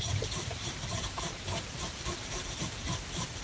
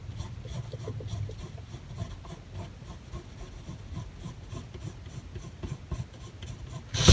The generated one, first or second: first